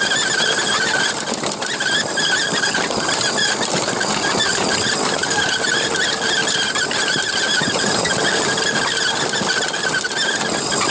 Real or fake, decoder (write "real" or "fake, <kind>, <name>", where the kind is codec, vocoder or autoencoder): real